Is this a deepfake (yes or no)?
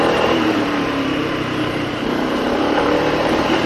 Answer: yes